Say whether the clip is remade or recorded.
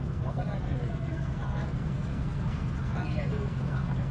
remade